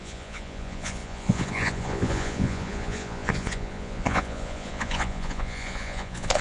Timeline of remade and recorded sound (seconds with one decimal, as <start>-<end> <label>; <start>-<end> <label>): 0.0-6.4 remade